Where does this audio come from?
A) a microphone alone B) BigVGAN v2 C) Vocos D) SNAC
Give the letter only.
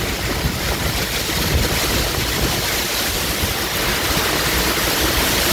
A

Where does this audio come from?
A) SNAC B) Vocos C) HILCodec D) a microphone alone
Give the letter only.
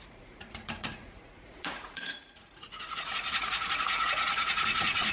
B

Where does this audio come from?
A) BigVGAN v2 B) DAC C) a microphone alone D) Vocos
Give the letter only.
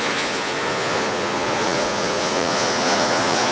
D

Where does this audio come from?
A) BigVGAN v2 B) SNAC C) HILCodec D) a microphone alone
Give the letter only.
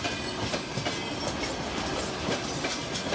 D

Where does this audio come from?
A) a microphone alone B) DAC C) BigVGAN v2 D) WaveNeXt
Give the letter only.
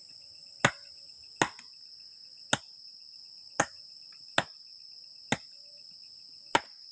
A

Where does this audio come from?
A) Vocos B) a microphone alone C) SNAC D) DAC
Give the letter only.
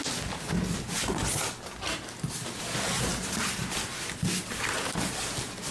B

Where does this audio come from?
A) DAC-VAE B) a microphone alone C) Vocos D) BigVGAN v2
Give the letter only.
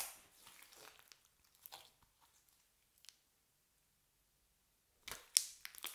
B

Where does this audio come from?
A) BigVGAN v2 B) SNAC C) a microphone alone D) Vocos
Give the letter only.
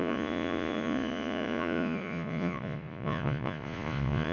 D